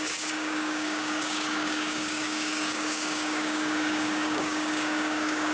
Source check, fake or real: fake